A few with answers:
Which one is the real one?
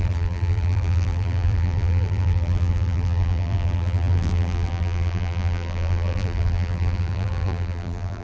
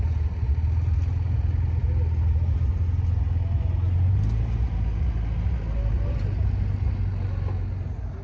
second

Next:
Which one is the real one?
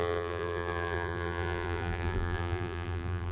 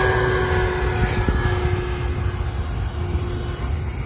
second